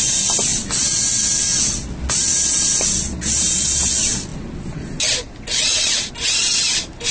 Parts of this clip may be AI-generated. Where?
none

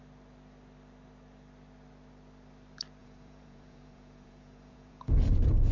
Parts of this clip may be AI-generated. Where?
3.0-5.7 (vocoder, Vocos)